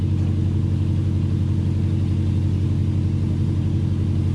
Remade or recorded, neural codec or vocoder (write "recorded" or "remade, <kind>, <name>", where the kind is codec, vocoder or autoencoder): recorded